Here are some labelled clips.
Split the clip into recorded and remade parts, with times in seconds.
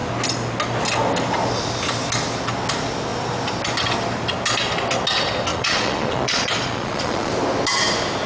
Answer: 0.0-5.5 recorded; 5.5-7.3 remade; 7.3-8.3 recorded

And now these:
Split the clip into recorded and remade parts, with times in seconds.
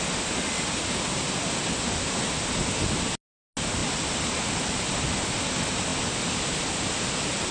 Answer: 0.0-7.5 recorded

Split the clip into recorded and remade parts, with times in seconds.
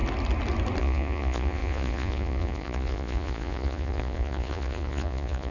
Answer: 0.0-0.8 recorded; 0.8-5.5 remade